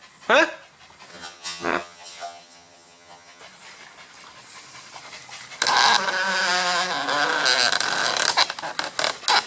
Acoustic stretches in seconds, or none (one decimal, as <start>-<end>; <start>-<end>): 0.0-1.1; 3.4-9.5